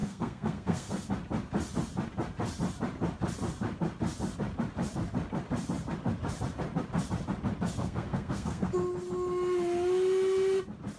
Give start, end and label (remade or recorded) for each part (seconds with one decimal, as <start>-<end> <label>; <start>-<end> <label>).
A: 0.0-1.1 remade; 1.1-7.8 recorded; 7.8-8.7 remade; 8.7-11.0 recorded